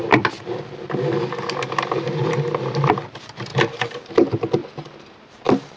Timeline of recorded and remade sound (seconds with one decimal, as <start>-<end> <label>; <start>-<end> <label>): 0.0-3.5 recorded; 3.5-4.1 remade; 4.1-4.6 recorded; 4.6-5.8 remade